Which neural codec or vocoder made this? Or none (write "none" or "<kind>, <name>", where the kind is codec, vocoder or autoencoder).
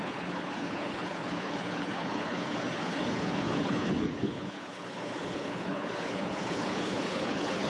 codec, HILCodec